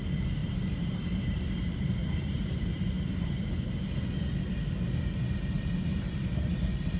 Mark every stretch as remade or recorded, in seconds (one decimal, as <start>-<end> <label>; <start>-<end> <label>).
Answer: 0.0-0.4 recorded; 0.4-3.5 remade; 3.5-5.9 recorded; 5.9-6.6 remade; 6.6-7.0 recorded